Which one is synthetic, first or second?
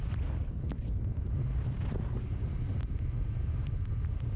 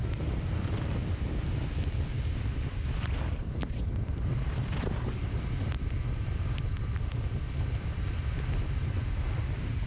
second